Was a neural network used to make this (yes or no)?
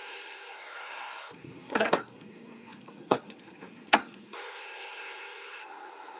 yes